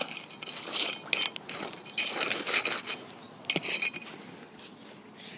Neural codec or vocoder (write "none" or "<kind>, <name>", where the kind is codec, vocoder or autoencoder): none